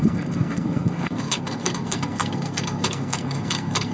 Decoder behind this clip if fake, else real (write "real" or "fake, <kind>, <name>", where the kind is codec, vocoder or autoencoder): fake, codec, SNAC